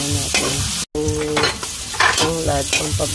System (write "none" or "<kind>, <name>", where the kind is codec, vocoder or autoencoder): none